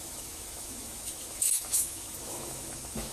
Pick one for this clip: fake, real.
fake